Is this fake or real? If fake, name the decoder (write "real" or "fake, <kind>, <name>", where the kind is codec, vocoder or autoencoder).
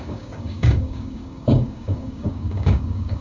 fake, codec, DAC